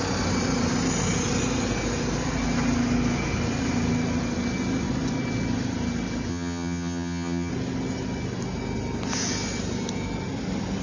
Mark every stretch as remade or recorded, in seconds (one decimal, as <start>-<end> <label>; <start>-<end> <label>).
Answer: 0.0-6.3 recorded; 6.3-7.5 remade; 7.5-10.8 recorded